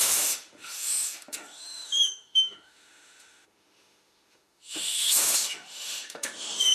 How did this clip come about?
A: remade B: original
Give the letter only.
A